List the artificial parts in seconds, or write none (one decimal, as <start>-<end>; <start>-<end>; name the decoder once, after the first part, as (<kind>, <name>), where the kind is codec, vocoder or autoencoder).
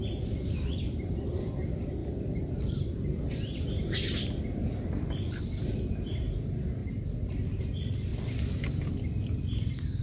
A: 0.0-8.1 (vocoder, BigVGAN v2); 9.0-10.0